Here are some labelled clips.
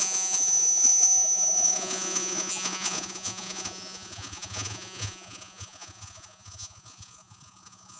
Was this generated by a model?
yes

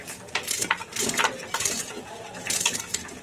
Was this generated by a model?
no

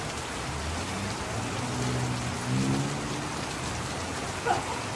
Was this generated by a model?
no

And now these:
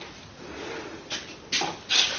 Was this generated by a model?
no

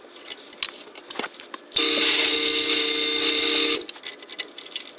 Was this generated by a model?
no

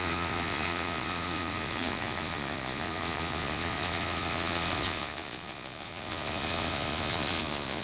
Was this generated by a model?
yes